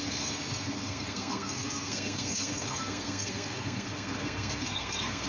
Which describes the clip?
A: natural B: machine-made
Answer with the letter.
B